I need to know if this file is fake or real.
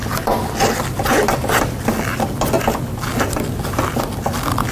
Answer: real